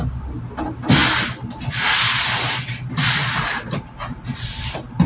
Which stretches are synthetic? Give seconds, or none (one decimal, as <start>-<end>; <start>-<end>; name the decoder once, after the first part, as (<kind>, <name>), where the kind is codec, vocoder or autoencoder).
3.2-5.1 (vocoder, BigVGAN v2)

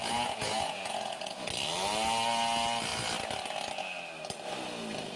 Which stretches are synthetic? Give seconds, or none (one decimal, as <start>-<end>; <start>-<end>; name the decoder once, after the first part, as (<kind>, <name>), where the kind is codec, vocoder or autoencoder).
0.0-1.5 (vocoder, Vocos)

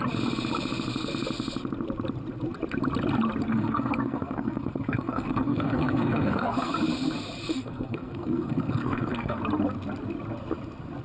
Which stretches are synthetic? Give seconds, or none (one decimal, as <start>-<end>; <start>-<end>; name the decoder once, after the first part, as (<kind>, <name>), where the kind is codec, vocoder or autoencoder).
3.5-6.7 (codec, SNAC); 7.5-9.4

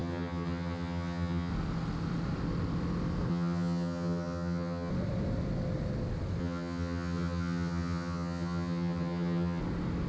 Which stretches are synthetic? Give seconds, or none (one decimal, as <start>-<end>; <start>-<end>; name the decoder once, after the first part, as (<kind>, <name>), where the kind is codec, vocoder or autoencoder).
0.0-1.5 (vocoder, HiFi-GAN); 3.3-4.9; 6.4-9.6